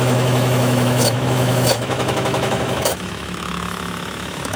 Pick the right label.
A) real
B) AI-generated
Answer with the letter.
B